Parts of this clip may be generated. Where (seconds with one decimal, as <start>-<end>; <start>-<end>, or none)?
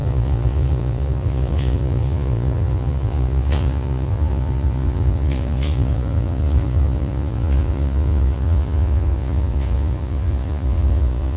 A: 0.0-11.4